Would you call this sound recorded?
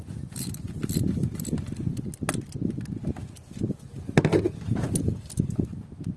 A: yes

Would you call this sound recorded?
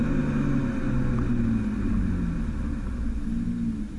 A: yes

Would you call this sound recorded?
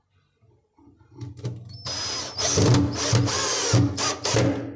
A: yes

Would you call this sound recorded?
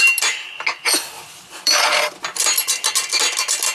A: yes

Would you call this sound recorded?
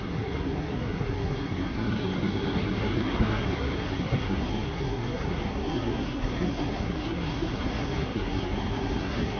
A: no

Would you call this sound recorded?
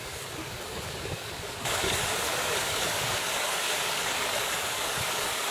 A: no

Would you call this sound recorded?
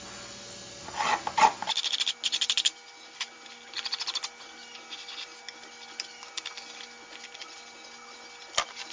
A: yes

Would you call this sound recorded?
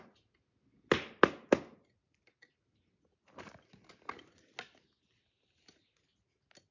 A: yes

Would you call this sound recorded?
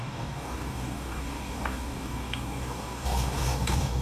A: no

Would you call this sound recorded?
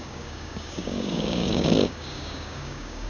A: no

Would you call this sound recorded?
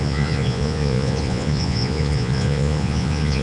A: no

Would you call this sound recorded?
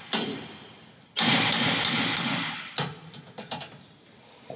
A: yes